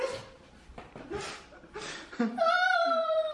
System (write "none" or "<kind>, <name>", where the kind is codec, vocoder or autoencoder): vocoder, BigVGAN v2